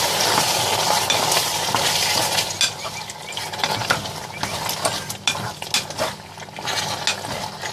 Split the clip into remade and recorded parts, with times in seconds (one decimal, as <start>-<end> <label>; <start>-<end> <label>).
0.0-3.8 recorded; 3.8-4.3 remade; 4.3-7.7 recorded